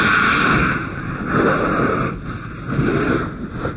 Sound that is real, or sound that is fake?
real